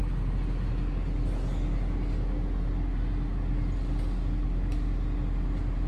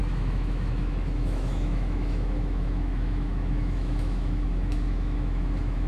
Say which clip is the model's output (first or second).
second